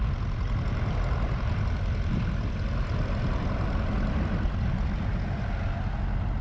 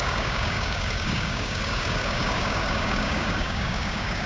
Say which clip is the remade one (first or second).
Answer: second